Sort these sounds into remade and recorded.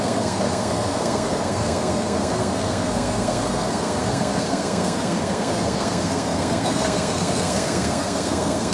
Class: remade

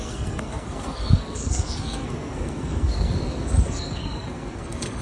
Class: remade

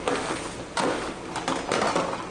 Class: recorded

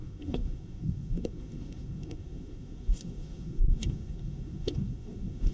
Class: remade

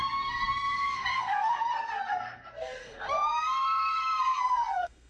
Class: remade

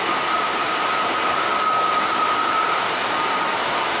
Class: recorded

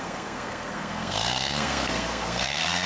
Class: remade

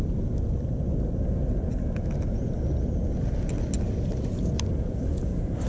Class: recorded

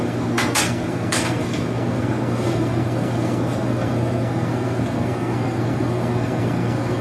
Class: remade